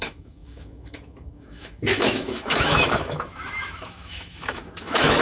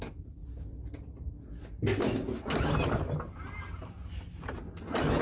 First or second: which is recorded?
second